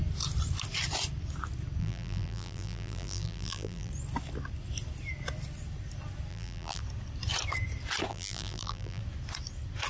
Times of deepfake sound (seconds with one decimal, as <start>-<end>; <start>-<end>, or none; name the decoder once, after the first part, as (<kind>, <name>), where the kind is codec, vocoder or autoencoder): 1.8-3.9 (vocoder, BigVGAN v2); 6.3-6.8; 8.1-9.0